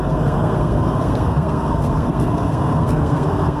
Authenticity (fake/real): fake